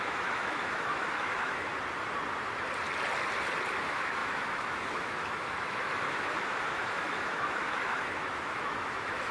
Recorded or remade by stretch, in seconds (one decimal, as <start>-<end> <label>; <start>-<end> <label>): 0.0-1.7 remade; 1.7-3.8 recorded; 3.8-9.3 remade